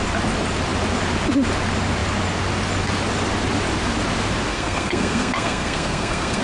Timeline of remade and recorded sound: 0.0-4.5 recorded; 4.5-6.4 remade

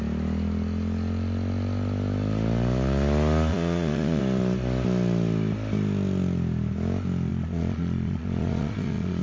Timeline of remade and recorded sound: 0.0-3.5 recorded; 3.5-4.2 remade; 4.2-7.3 recorded; 7.3-9.2 remade

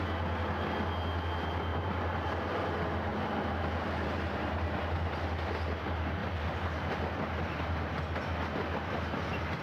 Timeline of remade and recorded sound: 0.0-1.7 recorded; 1.7-2.5 remade; 2.5-3.1 recorded; 3.1-5.4 remade; 5.4-6.2 recorded; 6.2-7.0 remade; 7.0-9.6 recorded

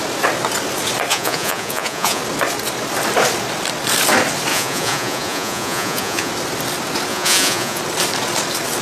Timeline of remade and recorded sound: 0.0-1.1 recorded; 1.1-2.2 remade; 2.2-4.5 recorded; 4.5-6.3 remade; 6.3-7.1 recorded; 7.1-7.8 remade; 7.8-8.8 recorded

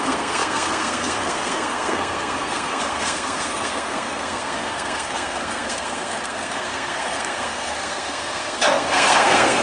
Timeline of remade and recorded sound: 0.0-9.6 remade

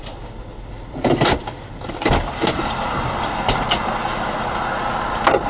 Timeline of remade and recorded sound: 0.0-3.3 remade; 3.3-5.5 recorded